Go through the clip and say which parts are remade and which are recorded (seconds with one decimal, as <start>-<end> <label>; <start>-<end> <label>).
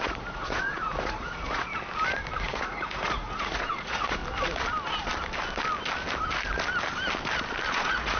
0.0-1.7 remade; 1.7-2.4 recorded; 2.4-4.2 remade; 4.2-7.7 recorded; 7.7-8.2 remade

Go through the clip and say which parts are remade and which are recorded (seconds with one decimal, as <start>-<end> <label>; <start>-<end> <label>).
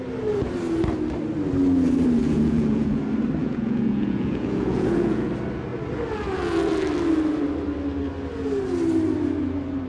0.0-2.2 recorded; 2.2-3.0 remade; 3.0-3.4 recorded; 3.4-5.3 remade; 5.3-9.9 recorded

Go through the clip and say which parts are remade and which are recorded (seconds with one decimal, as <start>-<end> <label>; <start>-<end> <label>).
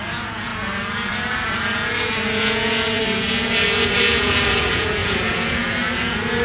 0.0-6.4 remade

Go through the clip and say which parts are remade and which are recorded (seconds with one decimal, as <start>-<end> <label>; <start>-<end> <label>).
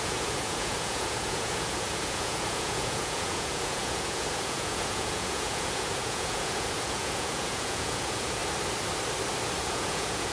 0.0-8.4 remade; 8.4-9.6 recorded; 9.6-10.3 remade